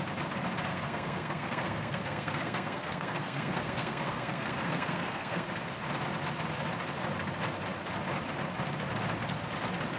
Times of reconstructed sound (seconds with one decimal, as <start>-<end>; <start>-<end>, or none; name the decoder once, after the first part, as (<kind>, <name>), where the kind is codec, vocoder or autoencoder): 0.7-5.5 (codec, SNAC)